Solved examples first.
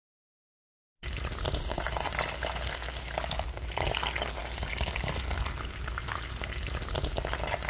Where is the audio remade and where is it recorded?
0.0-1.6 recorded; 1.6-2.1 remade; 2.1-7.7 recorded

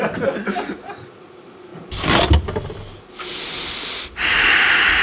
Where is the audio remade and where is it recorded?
0.0-5.0 recorded

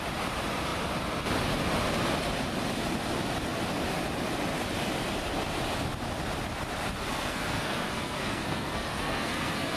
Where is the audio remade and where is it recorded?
0.0-7.1 recorded; 7.1-9.8 remade

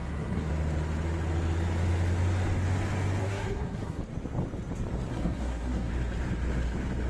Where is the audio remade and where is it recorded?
0.0-0.5 remade; 0.5-3.2 recorded; 3.2-4.0 remade; 4.0-5.1 recorded; 5.1-5.9 remade; 5.9-7.1 recorded

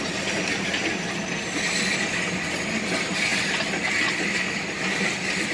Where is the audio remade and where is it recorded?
0.0-5.5 recorded